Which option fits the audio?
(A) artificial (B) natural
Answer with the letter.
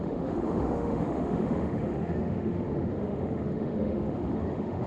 A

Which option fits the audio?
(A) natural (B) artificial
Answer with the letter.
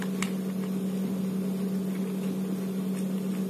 A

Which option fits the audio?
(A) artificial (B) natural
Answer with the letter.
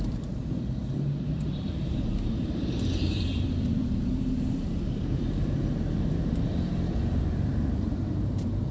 A